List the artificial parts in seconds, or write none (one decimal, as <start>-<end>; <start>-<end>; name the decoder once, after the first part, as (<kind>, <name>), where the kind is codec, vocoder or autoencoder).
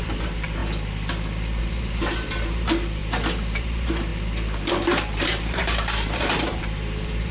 0.0-0.6 (vocoder, BigVGAN v2); 1.6-3.0; 3.6-4.1; 4.7-7.3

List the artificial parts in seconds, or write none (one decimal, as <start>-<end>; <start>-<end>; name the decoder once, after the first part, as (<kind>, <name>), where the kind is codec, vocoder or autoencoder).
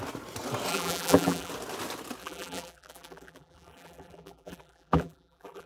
0.7-1.5 (vocoder, BigVGAN v2); 2.2-5.7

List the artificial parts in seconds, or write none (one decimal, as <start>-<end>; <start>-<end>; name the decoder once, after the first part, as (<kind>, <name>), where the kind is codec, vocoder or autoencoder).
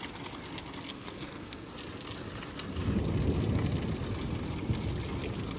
0.9-1.7 (codec, SNAC)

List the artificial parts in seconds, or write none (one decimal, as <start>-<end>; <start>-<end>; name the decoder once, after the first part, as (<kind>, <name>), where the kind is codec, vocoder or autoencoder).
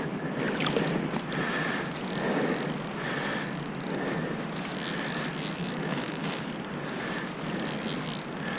5.6-6.4 (autoencoder, DAC-VAE)